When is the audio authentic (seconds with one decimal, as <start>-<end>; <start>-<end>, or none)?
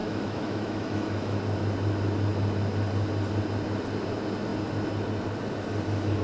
1.4-6.2